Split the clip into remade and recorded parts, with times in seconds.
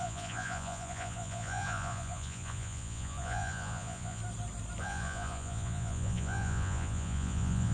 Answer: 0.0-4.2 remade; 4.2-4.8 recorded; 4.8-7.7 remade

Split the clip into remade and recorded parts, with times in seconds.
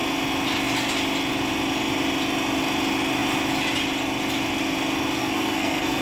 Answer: 0.0-5.2 recorded; 5.2-6.0 remade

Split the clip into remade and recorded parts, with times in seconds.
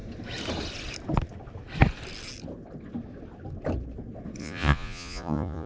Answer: 0.0-4.4 recorded; 4.4-5.7 remade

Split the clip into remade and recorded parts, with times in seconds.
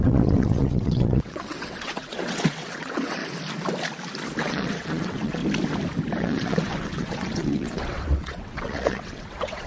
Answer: 0.0-3.2 remade; 3.2-4.4 recorded; 4.4-5.4 remade; 5.4-6.2 recorded; 6.2-9.7 remade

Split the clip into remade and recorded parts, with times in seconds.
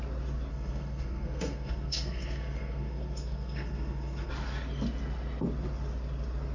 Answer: 0.0-0.5 recorded; 0.5-4.3 remade; 4.3-6.5 recorded